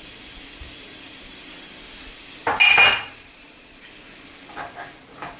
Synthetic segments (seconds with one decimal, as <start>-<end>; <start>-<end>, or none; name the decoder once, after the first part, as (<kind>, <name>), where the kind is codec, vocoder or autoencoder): 2.9-3.9 (vocoder, Vocos)